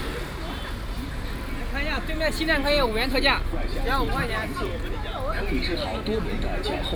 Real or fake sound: real